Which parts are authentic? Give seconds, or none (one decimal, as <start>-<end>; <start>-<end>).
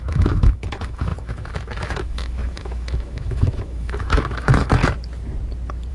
4.8-5.9